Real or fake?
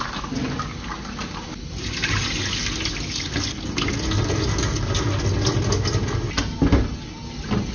real